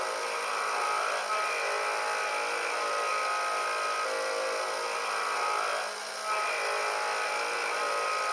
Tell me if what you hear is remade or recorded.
recorded